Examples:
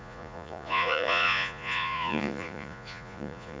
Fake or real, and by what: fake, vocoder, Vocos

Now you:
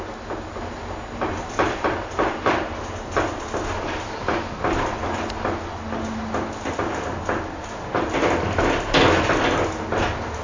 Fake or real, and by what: real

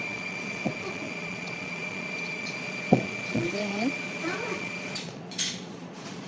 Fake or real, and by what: fake, vocoder, Vocos